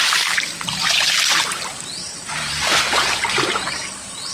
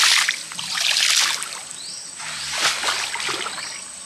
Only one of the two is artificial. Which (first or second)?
first